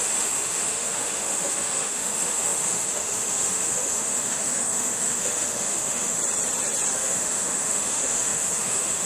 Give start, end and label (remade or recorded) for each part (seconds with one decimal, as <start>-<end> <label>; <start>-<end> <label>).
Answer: 0.0-6.2 remade; 6.2-6.9 recorded; 6.9-9.1 remade